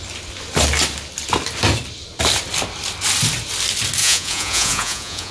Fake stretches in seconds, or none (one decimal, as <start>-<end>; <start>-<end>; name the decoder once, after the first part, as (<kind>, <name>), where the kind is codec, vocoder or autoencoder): 4.0-5.3 (vocoder, Vocos)